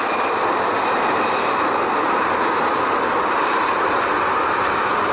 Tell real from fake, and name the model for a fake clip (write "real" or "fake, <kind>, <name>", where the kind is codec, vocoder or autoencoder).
real